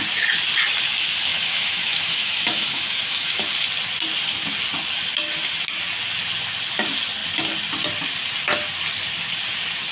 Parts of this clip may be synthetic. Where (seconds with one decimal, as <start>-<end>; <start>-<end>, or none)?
1.3-3.5

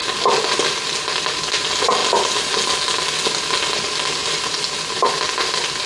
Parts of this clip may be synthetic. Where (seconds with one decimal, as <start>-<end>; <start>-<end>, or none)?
none

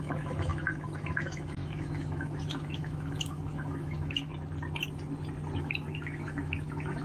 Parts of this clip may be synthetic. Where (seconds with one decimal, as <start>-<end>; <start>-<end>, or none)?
0.0-4.3; 5.6-7.0

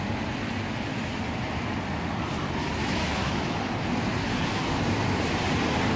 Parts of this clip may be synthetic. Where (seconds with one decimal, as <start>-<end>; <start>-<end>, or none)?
2.8-3.6

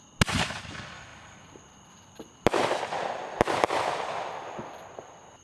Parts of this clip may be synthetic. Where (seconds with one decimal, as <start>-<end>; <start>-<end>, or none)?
none